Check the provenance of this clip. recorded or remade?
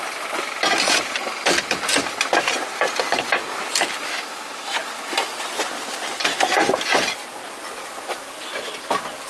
recorded